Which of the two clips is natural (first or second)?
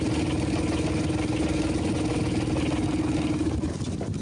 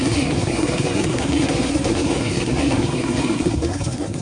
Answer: first